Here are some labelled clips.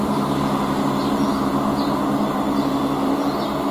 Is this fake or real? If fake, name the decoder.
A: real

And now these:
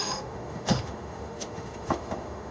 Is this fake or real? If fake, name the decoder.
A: fake, autoencoder, DAC-VAE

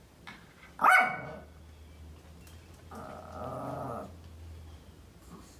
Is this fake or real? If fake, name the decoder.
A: real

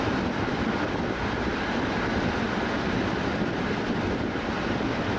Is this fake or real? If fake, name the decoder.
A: real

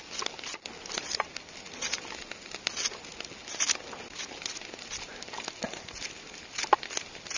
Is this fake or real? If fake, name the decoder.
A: real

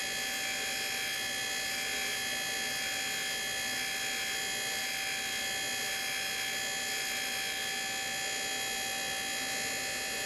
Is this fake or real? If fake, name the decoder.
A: real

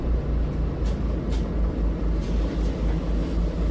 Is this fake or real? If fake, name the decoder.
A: real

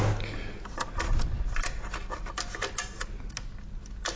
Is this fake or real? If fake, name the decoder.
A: real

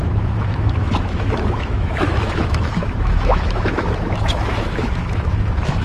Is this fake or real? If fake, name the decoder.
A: fake, autoencoder, DAC-VAE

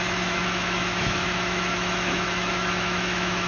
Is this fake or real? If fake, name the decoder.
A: fake, autoencoder, DAC-VAE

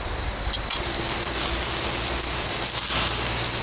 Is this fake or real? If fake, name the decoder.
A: real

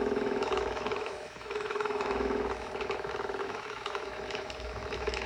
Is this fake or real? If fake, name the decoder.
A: fake, autoencoder, DAC-VAE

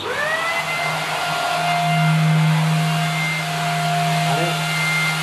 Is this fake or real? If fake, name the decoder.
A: real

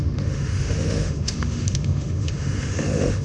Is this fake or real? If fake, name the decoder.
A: fake, autoencoder, DAC-VAE